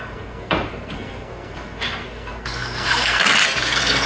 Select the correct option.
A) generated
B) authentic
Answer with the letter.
A